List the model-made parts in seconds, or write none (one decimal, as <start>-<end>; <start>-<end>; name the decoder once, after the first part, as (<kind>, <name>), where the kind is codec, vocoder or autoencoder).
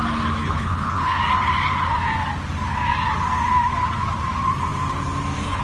0.4-1.2 (codec, HILCodec)